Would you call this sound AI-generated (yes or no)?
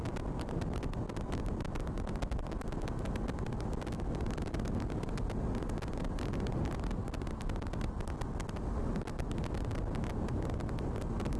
no